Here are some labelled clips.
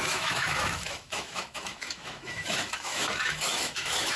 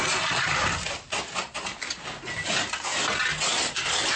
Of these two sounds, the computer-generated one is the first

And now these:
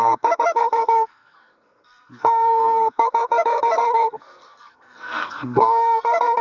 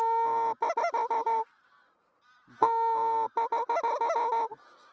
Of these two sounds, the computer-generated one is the first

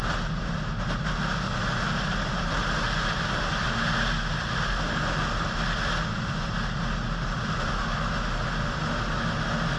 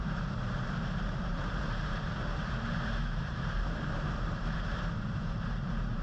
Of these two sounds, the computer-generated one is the second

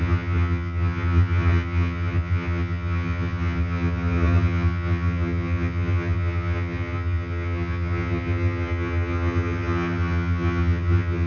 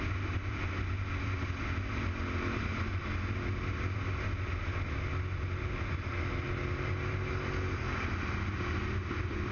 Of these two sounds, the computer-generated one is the first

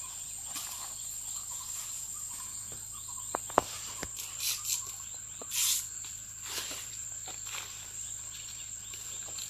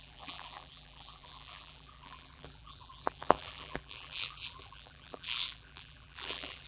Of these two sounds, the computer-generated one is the second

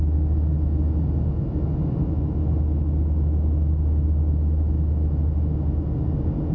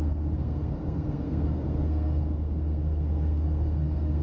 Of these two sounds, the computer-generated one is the second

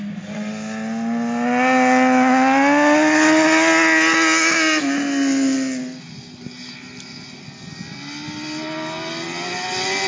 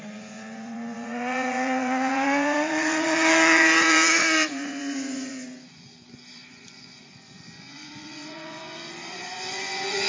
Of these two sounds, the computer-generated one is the second